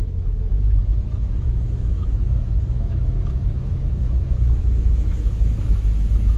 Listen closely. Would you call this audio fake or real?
fake